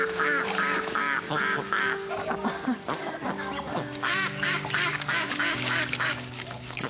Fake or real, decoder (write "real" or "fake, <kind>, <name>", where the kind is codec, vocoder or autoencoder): fake, codec, DAC